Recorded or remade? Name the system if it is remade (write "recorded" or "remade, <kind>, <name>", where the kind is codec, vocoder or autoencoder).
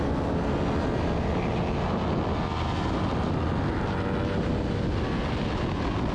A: recorded